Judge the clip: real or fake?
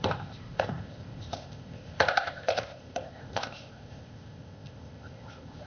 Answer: fake